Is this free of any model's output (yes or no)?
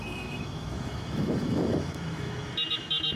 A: no